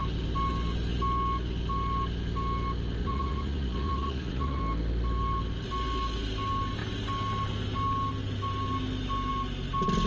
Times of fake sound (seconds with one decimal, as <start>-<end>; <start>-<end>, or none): 3.0-4.6